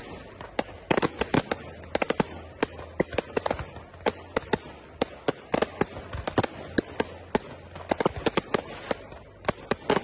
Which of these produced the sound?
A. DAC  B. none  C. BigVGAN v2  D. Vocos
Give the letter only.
B